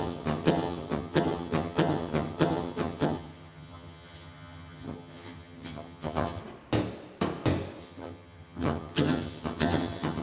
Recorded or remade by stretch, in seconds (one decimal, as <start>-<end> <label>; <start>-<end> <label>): 0.0-6.4 remade; 6.4-7.8 recorded; 7.8-10.2 remade